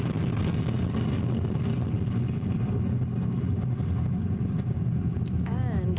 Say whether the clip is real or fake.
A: real